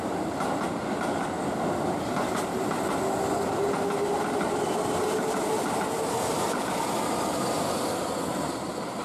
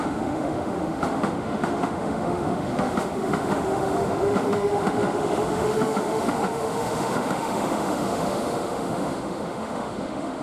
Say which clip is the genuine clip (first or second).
first